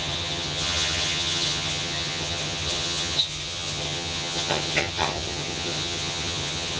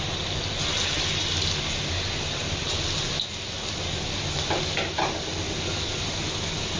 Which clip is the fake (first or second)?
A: first